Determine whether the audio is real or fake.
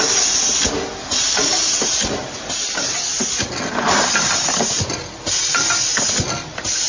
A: real